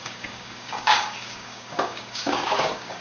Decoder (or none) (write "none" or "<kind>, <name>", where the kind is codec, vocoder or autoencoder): codec, DAC